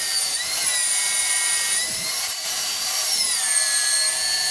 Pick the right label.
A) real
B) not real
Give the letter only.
B